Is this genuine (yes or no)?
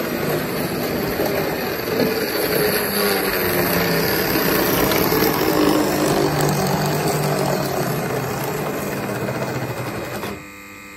yes